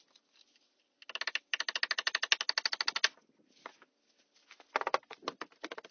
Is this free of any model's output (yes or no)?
yes